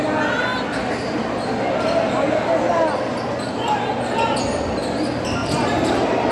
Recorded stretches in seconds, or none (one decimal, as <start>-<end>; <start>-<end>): 0.0-5.4